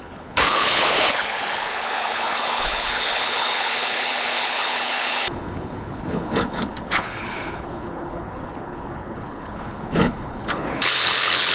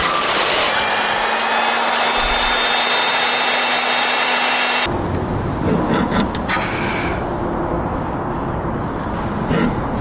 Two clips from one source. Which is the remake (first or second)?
first